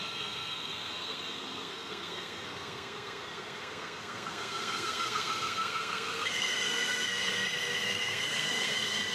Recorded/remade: remade